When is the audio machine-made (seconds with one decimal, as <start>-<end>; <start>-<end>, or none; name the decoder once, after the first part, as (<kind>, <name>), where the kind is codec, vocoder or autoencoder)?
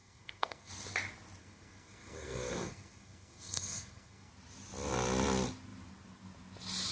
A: 0.0-0.7 (codec, SNAC); 1.4-4.3